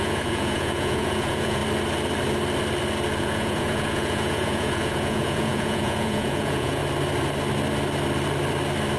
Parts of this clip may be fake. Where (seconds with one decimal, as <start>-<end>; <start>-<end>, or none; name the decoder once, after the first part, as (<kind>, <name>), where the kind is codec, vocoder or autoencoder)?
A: 0.0-1.6 (vocoder, Vocos); 3.2-6.8